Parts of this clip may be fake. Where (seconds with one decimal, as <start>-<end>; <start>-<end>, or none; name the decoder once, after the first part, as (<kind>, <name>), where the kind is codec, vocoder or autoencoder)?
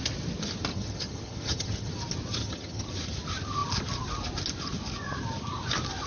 0.7-1.9 (vocoder, HiFi-GAN); 2.4-2.9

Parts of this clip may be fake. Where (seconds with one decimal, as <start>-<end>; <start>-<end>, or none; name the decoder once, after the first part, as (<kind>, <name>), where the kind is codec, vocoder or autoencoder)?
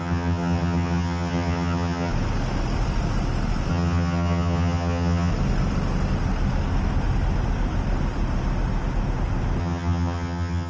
0.0-2.1 (vocoder, HiFi-GAN); 3.7-5.3; 9.6-10.7